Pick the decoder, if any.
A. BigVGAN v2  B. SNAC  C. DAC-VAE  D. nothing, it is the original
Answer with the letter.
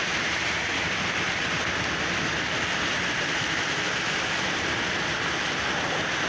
D